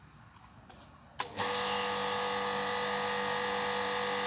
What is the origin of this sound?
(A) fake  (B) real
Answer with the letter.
B